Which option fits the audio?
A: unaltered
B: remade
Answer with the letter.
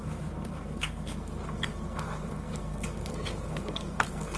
B